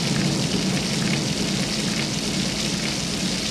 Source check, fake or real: real